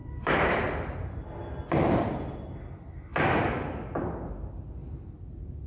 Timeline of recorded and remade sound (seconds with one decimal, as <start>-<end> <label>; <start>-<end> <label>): 0.0-2.1 remade; 2.1-3.1 recorded; 3.1-3.7 remade; 3.7-5.7 recorded